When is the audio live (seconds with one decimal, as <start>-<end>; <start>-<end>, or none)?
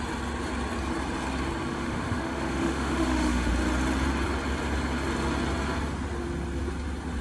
0.0-1.7; 3.5-7.2